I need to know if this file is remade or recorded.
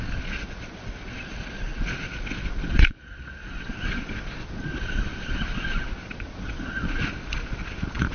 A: remade